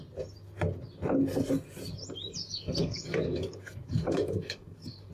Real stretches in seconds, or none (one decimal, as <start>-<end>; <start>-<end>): 0.0-2.8